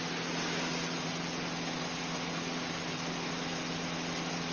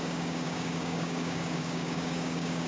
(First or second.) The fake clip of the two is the second